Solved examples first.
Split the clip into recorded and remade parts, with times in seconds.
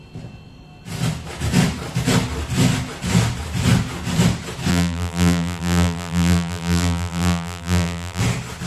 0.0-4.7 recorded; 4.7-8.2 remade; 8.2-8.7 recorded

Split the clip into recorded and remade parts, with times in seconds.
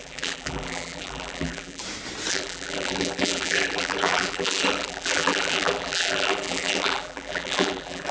0.0-1.8 remade; 1.8-2.3 recorded; 2.3-8.1 remade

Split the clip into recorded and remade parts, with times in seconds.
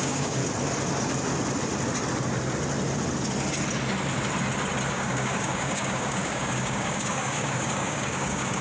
0.0-0.4 remade; 0.4-4.9 recorded; 4.9-8.6 remade